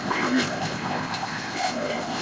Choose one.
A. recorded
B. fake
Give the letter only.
B